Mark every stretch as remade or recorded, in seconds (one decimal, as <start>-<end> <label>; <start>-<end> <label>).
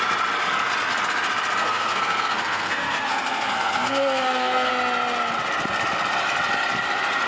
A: 0.0-1.6 recorded; 1.6-4.7 remade; 4.7-7.3 recorded